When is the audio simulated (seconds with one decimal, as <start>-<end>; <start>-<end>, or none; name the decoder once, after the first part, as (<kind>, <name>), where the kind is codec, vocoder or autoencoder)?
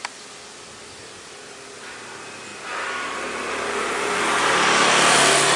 none